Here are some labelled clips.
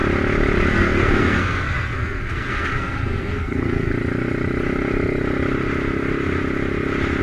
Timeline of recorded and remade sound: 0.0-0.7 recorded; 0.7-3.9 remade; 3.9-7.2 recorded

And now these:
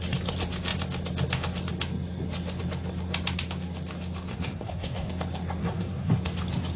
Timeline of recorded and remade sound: 0.0-4.3 recorded; 4.3-5.1 remade; 5.1-5.6 recorded; 5.6-6.1 remade; 6.1-6.8 recorded

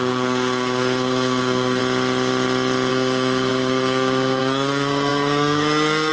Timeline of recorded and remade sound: 0.0-1.8 remade; 1.8-2.9 recorded; 2.9-6.1 remade

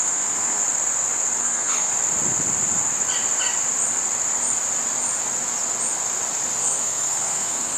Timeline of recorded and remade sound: 0.0-0.6 remade; 0.6-1.4 recorded; 1.4-1.9 remade; 1.9-6.6 recorded; 6.6-7.8 remade

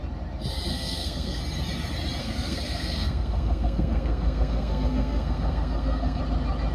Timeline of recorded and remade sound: 0.0-0.7 recorded; 0.7-1.4 remade; 1.4-2.2 recorded; 2.2-6.2 remade; 6.2-6.7 recorded

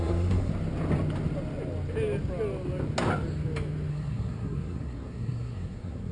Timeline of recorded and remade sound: 0.0-0.5 remade; 0.5-3.9 recorded; 3.9-6.1 remade

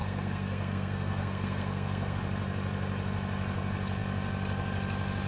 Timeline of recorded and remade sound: 0.0-2.2 remade; 2.2-5.3 recorded

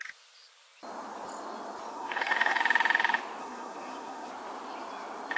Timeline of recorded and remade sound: 0.0-1.9 recorded; 1.9-2.6 remade; 2.6-3.4 recorded; 3.4-4.3 remade; 4.3-5.4 recorded